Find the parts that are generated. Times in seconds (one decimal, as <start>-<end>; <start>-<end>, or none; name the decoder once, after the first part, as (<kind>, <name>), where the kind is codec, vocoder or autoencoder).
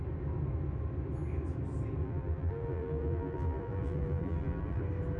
2.0-4.8 (vocoder, BigVGAN v2)